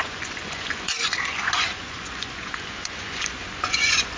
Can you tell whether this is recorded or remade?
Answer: remade